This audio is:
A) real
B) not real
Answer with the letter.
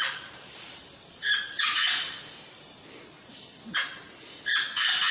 B